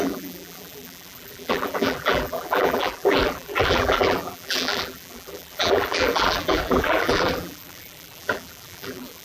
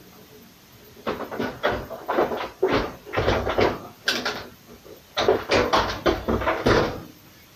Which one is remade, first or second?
first